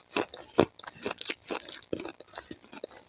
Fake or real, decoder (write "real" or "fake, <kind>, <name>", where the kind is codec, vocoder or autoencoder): real